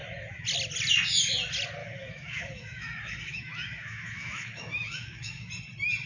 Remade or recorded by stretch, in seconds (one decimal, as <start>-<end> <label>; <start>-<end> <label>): 0.0-1.8 recorded; 1.8-5.5 remade; 5.5-6.1 recorded